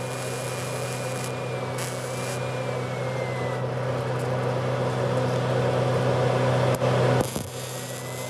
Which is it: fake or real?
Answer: real